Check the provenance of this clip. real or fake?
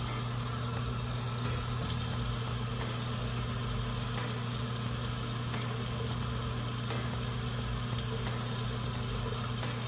real